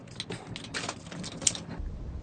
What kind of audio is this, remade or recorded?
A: recorded